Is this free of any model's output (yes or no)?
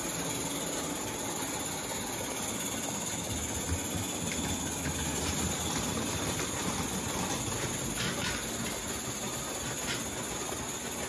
yes